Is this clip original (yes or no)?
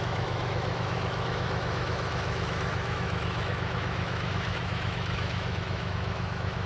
no